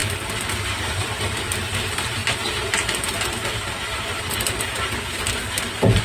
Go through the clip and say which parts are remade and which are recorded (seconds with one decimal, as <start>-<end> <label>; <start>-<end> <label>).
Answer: 0.0-0.9 recorded; 0.9-2.2 remade; 2.2-6.0 recorded